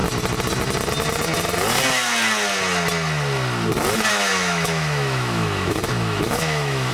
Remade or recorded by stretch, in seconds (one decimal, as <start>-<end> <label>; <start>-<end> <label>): 0.0-4.1 recorded; 4.1-6.9 remade